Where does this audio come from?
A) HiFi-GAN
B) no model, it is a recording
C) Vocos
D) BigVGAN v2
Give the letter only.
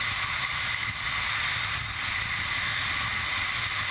B